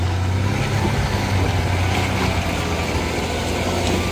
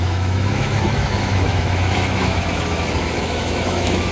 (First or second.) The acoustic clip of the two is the first